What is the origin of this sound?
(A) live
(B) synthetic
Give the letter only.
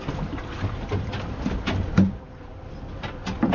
A